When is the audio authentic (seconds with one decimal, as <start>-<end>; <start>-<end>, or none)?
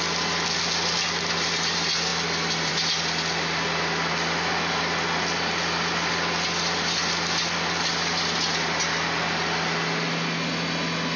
0.0-11.2